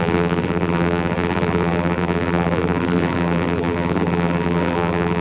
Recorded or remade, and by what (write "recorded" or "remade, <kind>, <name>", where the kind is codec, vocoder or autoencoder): remade, vocoder, BigVGAN v2